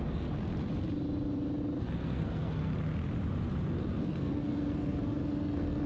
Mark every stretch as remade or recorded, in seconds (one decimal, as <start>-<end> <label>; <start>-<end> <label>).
0.0-0.5 remade; 0.5-1.8 recorded; 1.8-2.7 remade; 2.7-4.0 recorded; 4.0-5.9 remade